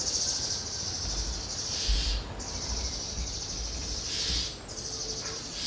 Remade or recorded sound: recorded